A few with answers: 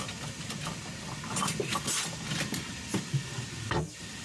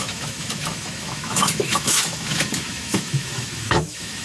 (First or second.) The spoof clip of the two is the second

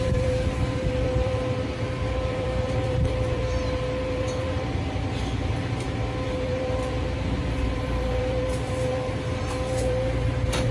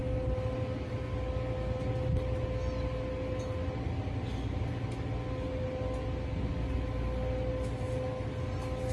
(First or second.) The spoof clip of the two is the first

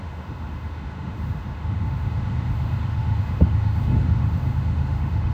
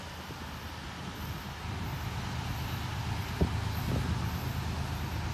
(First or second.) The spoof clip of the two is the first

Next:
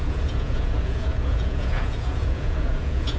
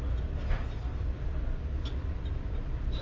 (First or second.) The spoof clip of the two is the first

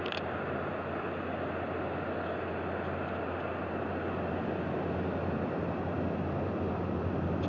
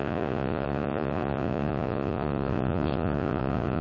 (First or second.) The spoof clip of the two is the second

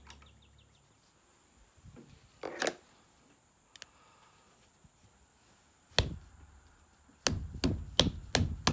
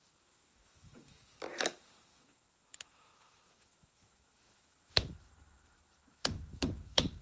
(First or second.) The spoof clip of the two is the second